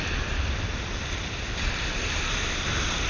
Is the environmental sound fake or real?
real